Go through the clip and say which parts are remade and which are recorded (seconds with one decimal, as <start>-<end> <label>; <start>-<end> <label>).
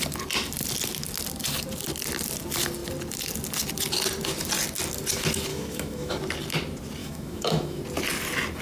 0.0-5.5 recorded; 5.5-6.2 remade; 6.2-7.0 recorded; 7.0-7.8 remade; 7.8-8.6 recorded